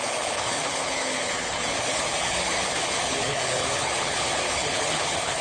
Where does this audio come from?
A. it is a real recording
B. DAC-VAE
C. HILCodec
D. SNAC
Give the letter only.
C